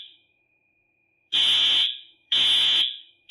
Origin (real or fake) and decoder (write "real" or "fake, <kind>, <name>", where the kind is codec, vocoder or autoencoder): fake, autoencoder, DAC-VAE